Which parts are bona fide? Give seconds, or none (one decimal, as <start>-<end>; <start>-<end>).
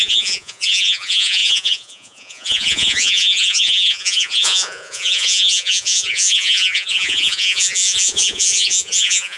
none